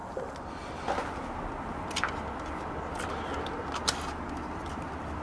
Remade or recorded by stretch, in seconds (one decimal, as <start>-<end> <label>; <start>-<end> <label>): 0.0-5.2 recorded

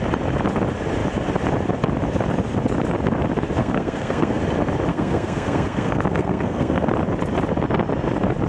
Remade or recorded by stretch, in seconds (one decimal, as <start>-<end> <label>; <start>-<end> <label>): 0.0-3.6 recorded; 3.6-4.4 remade; 4.4-4.9 recorded; 4.9-6.9 remade; 6.9-8.5 recorded

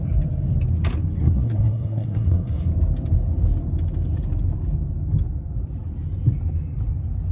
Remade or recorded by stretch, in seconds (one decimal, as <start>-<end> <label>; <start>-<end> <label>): 0.0-1.2 recorded; 1.2-2.7 remade; 2.7-7.3 recorded

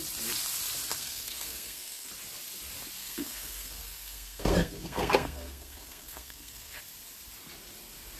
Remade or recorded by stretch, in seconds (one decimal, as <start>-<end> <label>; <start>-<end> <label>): 0.0-0.9 recorded; 0.9-2.1 remade; 2.1-3.0 recorded; 3.0-6.8 remade; 6.8-8.2 recorded

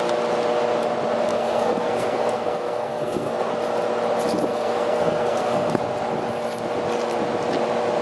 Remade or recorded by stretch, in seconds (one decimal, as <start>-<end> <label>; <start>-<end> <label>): 0.0-1.3 recorded; 1.3-3.5 remade; 3.5-4.5 recorded; 4.5-5.8 remade; 5.8-8.0 recorded

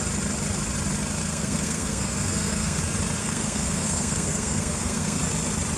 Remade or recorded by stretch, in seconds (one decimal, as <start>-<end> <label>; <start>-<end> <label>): 0.0-1.2 recorded; 1.2-2.8 remade; 2.8-3.2 recorded; 3.2-5.2 remade; 5.2-5.8 recorded